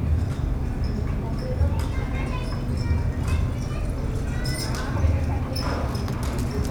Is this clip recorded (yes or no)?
yes